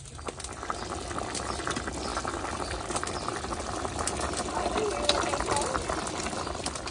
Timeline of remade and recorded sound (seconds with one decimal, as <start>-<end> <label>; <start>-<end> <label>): 0.0-6.9 recorded